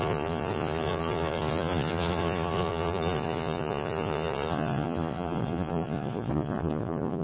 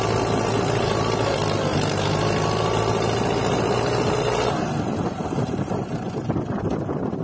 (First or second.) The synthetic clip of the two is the first